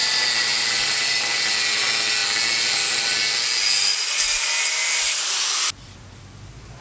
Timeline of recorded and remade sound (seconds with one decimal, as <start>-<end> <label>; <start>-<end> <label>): 0.0-1.5 remade; 1.5-6.8 recorded